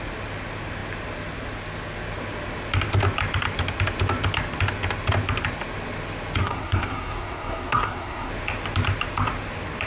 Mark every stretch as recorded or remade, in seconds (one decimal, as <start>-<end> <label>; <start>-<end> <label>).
0.0-6.4 recorded; 6.4-8.3 remade; 8.3-9.9 recorded